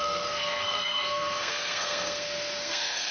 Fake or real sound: fake